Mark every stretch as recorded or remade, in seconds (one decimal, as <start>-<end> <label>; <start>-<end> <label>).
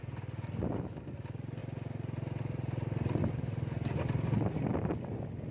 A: 0.0-5.5 recorded